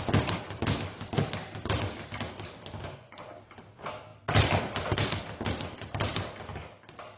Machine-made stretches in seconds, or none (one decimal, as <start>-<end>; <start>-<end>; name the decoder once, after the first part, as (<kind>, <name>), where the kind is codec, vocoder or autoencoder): 2.8-3.3 (vocoder, Vocos)